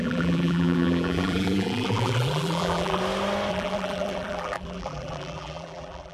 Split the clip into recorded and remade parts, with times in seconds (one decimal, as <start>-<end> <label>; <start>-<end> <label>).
0.0-3.0 remade; 3.0-3.5 recorded; 3.5-6.1 remade